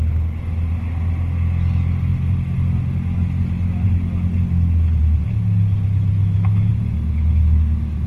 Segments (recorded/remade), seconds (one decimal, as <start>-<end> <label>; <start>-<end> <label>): 0.0-6.2 recorded; 6.2-6.7 remade; 6.7-8.1 recorded